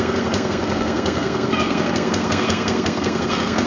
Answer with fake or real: fake